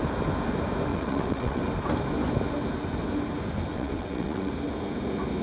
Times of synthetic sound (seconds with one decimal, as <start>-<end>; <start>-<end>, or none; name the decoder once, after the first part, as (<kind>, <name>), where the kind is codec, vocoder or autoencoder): 0.9-1.6 (vocoder, WaveNeXt); 3.7-4.5